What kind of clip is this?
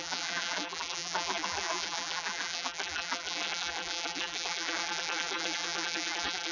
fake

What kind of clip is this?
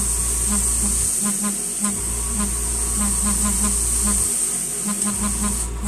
real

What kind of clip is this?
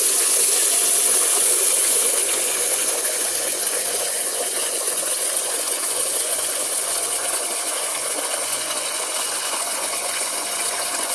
fake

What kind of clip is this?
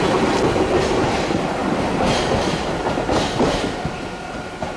real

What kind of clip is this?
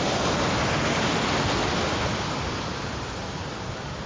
real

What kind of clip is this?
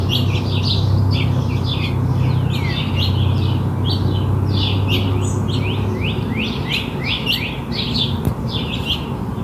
real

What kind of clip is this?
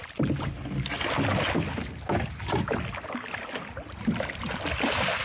real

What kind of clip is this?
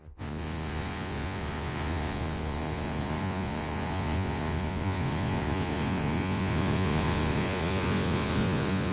fake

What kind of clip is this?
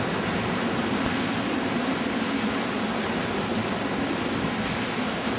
real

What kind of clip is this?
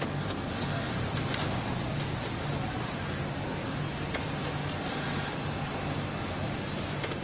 real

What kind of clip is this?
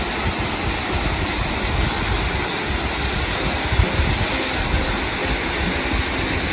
real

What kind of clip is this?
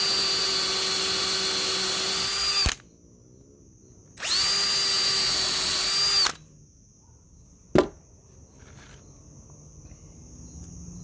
real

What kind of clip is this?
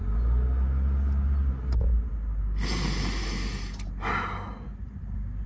real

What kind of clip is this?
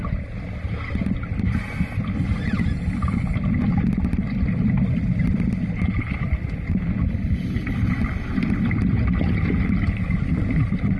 real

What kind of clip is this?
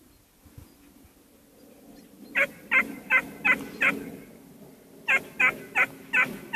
real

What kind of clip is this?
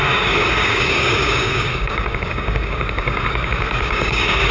fake